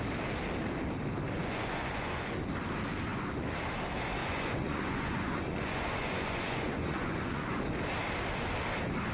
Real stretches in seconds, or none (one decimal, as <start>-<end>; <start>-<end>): 0.0-1.4; 2.5-4.2; 7.6-9.1